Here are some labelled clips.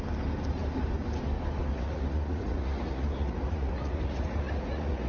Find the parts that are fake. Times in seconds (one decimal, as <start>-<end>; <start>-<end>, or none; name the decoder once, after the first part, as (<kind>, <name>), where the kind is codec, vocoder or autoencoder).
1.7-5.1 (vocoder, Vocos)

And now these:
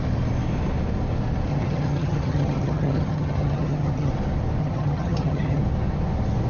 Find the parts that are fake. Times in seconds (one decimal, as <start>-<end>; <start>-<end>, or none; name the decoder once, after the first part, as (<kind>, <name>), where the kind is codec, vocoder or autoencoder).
1.5-4.1 (vocoder, HiFi-GAN); 4.6-5.6

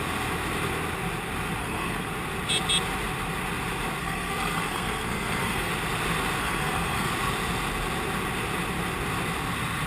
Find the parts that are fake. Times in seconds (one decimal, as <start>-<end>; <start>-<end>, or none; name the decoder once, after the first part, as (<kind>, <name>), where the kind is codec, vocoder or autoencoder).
1.6-2.1 (codec, SNAC); 4.0-5.7; 6.4-7.1